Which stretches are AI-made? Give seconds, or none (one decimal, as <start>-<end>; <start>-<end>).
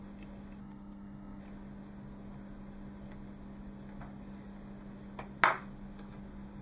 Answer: 0.6-1.4